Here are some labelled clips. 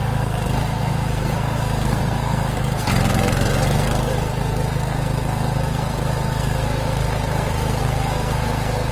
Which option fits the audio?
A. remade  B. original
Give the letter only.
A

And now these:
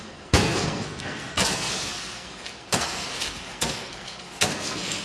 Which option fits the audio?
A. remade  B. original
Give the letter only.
A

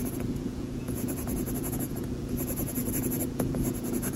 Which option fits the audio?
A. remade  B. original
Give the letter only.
A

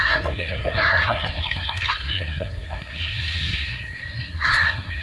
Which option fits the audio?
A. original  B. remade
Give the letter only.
B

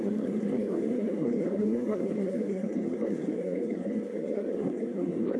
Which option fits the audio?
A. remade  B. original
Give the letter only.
A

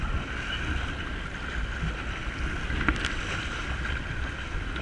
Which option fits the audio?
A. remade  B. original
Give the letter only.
B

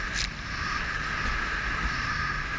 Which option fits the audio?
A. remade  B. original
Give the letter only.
B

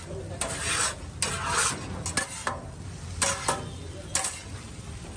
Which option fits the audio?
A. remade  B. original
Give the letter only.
B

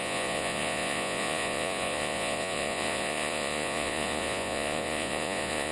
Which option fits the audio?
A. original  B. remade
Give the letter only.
B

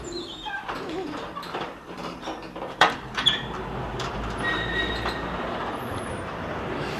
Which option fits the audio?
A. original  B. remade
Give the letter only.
B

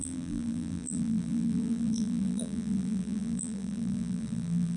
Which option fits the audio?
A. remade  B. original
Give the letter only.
A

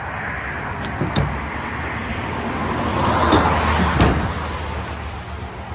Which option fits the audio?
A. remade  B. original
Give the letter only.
B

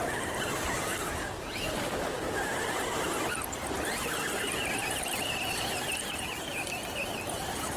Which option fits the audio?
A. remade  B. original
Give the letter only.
B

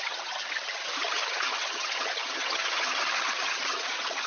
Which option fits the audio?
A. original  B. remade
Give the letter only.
B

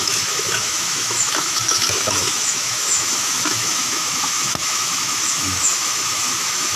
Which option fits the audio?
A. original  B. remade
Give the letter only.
B